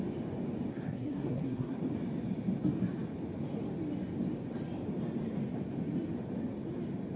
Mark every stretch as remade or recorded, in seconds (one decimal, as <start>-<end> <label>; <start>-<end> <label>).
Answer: 0.0-0.7 recorded; 0.7-1.8 remade; 1.8-7.2 recorded